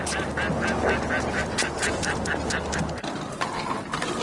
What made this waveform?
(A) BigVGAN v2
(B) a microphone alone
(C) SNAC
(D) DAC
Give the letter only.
B